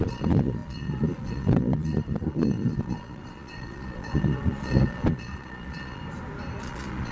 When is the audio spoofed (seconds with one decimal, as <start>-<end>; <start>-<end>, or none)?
0.0-6.0; 6.6-7.1